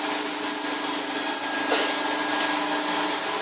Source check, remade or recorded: recorded